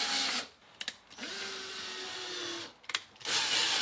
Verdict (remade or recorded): recorded